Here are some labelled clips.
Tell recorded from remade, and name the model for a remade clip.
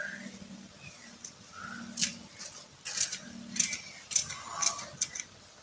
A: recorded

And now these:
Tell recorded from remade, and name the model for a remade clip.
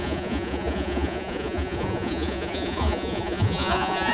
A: remade, vocoder, Vocos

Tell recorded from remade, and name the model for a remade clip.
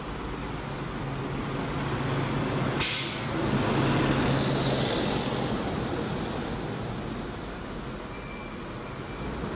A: recorded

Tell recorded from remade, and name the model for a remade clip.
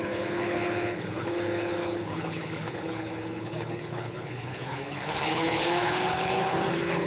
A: remade, codec, HILCodec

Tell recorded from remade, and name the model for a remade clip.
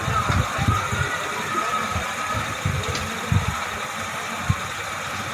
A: recorded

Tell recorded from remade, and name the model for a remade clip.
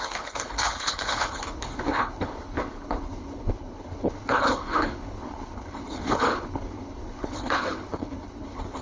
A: remade, codec, HILCodec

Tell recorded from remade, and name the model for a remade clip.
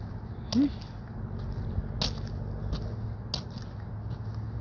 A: recorded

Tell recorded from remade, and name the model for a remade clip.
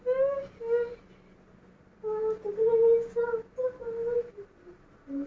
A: recorded